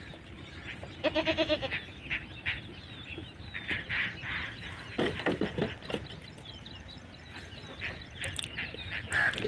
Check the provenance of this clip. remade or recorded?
recorded